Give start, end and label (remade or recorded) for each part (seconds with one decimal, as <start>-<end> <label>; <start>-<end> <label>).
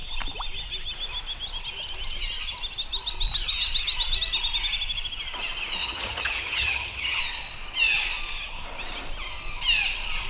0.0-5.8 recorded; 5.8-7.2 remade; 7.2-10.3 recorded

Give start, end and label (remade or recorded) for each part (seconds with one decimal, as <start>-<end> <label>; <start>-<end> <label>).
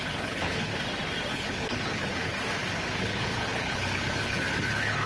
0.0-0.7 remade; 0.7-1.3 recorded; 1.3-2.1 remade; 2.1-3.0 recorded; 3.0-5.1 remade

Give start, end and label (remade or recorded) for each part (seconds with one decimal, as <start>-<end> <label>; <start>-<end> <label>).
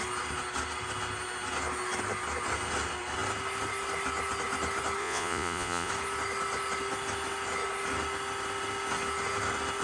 0.0-5.0 recorded; 5.0-5.9 remade; 5.9-9.8 recorded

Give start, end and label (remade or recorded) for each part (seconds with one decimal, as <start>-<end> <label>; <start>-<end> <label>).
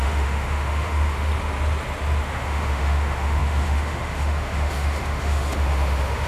0.0-1.3 remade; 1.3-2.2 recorded; 2.2-6.3 remade